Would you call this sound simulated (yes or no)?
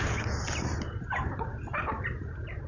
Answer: no